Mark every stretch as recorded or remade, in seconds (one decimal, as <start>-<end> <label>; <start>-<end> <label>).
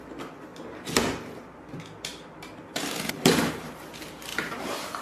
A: 0.0-4.3 recorded; 4.3-5.0 remade